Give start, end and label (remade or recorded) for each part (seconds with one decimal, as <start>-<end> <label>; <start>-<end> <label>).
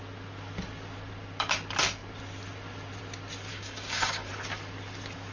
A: 0.0-3.5 recorded; 3.5-4.3 remade; 4.3-5.3 recorded